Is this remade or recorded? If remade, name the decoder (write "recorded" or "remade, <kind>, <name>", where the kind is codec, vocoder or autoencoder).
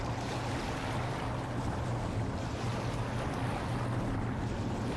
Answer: recorded